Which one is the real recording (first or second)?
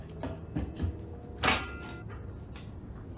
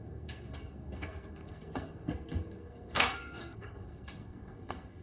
first